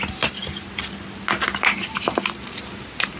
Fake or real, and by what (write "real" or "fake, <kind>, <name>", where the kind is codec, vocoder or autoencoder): real